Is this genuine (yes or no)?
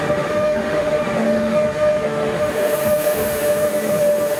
no